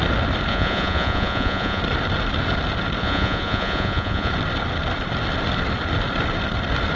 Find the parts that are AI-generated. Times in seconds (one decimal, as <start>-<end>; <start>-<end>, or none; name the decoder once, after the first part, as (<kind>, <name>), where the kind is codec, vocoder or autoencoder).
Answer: 0.5-1.8 (vocoder, Vocos); 3.0-4.3